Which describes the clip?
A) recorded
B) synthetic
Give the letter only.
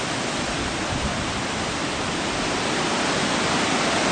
A